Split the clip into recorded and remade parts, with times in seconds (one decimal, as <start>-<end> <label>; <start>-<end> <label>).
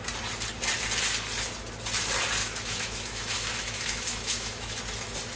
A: 0.0-2.4 recorded; 2.4-4.8 remade; 4.8-5.4 recorded